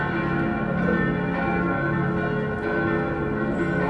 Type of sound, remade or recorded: recorded